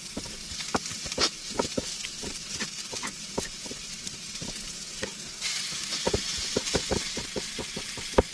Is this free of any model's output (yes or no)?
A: yes